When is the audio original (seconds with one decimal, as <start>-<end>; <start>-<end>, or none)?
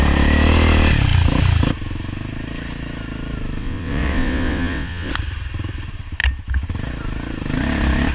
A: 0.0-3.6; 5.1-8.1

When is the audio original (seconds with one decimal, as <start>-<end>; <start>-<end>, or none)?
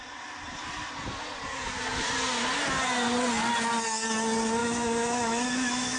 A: 0.0-4.6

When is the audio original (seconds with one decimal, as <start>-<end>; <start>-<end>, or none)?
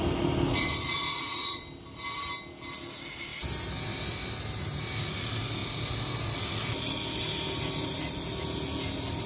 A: 0.0-0.5; 1.6-9.3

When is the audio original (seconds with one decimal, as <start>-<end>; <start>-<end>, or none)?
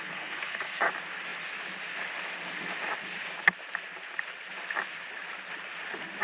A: 0.9-6.2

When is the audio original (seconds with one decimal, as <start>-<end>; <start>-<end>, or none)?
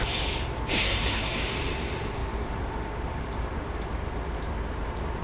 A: 0.0-0.8; 1.4-5.2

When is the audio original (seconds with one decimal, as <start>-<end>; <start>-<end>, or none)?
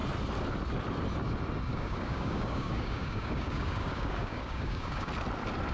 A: 0.0-1.7; 5.1-5.7